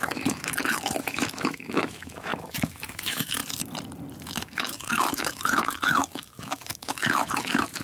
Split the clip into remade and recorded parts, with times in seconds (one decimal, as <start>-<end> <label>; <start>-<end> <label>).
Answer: 0.0-3.4 remade; 3.4-4.2 recorded; 4.2-7.8 remade

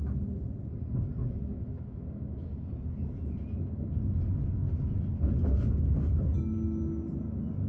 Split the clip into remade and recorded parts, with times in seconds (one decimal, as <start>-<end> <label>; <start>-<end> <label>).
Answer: 0.0-1.2 recorded; 1.2-2.5 remade; 2.5-7.7 recorded